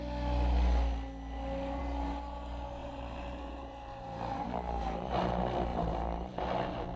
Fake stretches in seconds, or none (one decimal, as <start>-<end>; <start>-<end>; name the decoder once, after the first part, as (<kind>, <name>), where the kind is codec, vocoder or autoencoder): 2.8-5.1 (vocoder, BigVGAN v2); 5.7-6.4